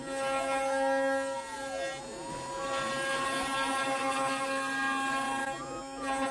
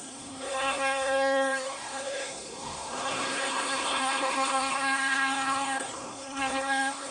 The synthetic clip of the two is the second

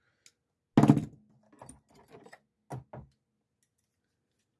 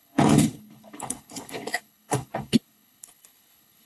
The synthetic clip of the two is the second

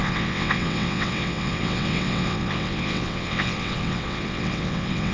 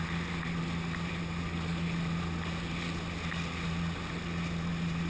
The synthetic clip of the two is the first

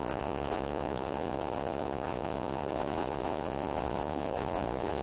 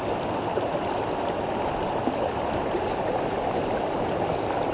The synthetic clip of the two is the first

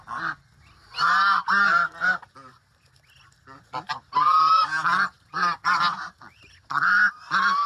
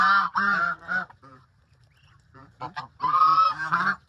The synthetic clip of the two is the second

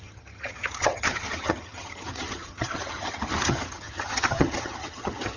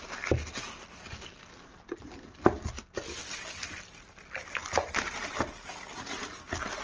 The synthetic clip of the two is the first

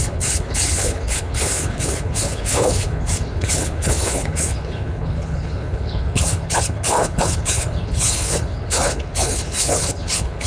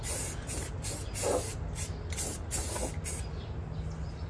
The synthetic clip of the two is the first